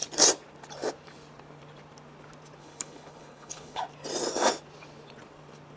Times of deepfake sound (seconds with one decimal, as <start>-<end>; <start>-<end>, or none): 2.6-3.8